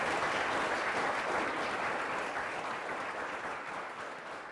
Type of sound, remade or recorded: recorded